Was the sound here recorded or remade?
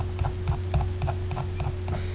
recorded